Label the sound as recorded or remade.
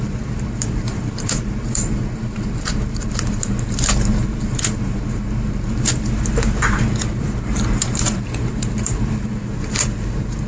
remade